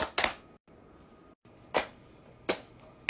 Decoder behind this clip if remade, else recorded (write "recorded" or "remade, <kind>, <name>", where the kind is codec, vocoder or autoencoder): recorded